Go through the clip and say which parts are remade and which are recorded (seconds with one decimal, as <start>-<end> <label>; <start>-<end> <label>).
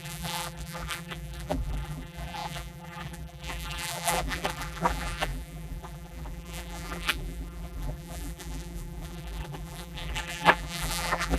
0.0-11.4 remade